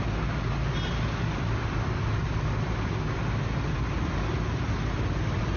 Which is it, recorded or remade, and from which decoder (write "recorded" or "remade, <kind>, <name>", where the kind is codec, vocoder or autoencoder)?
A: recorded